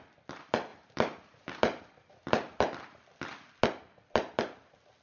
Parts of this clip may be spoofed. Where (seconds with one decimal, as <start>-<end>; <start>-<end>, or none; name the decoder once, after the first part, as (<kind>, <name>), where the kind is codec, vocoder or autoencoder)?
0.7-2.6 (vocoder, BigVGAN v2)